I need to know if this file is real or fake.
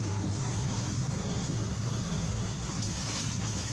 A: fake